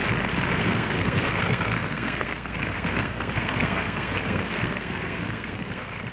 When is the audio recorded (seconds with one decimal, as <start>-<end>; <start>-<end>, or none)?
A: 0.0-0.6